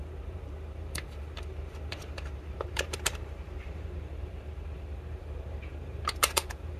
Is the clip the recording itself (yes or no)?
no